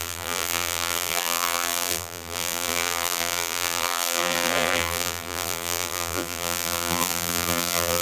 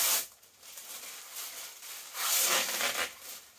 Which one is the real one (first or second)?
second